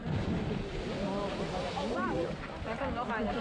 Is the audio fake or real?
real